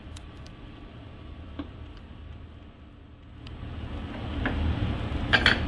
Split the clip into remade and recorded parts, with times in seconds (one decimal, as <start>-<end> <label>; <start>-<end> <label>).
0.0-1.6 remade; 1.6-5.7 recorded